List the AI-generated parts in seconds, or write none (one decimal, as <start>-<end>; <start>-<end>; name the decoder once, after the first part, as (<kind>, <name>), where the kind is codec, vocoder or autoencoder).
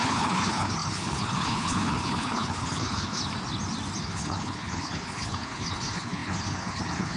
0.0-3.2 (codec, HILCodec); 4.0-7.2